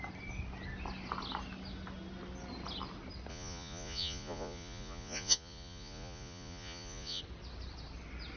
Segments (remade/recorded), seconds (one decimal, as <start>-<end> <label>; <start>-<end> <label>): 0.0-3.3 recorded; 3.3-7.2 remade; 7.2-8.4 recorded